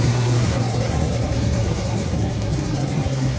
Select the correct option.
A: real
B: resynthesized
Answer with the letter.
B